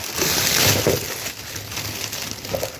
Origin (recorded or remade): recorded